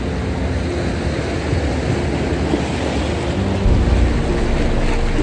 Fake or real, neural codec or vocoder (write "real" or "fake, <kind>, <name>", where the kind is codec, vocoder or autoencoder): real